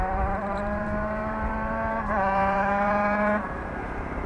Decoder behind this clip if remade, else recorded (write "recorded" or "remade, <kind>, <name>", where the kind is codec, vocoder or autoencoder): remade, vocoder, BigVGAN v2